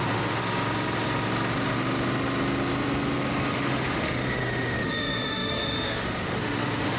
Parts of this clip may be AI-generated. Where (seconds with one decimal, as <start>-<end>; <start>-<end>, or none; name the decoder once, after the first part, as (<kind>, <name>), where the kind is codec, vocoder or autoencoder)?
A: 0.0-0.4 (autoencoder, DAC-VAE); 3.5-7.0